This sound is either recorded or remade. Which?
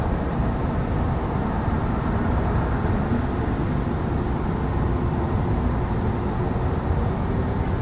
recorded